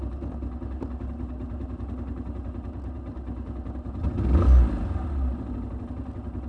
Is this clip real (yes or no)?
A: yes